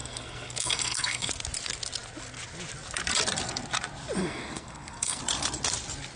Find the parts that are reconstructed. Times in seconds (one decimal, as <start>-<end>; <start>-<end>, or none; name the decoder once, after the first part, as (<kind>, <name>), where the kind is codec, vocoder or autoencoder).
0.0-1.3 (codec, SNAC); 4.2-5.2